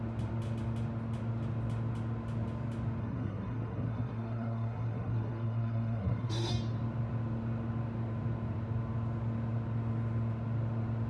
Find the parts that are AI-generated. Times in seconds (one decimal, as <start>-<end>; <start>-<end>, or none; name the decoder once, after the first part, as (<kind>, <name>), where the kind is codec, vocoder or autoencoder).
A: 3.0-6.5 (codec, SNAC)